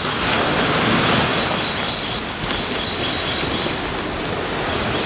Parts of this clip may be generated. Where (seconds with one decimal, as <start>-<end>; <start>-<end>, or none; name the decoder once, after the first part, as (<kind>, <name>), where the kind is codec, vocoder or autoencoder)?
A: none